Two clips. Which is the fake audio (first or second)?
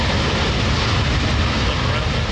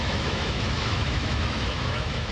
second